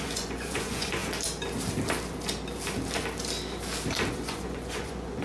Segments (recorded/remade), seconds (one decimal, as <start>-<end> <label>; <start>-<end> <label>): 0.0-1.0 remade; 1.0-4.1 recorded; 4.1-5.2 remade